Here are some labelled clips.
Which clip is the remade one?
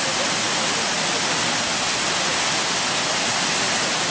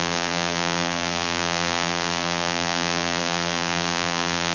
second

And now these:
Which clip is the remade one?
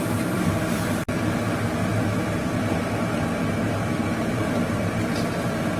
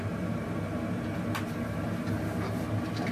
first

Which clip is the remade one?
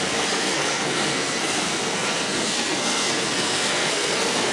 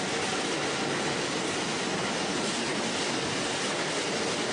first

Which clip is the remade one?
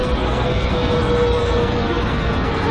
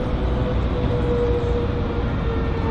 first